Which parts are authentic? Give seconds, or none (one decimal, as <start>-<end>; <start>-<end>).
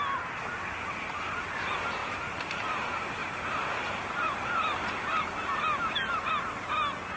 0.0-2.0; 2.6-3.2; 5.2-7.2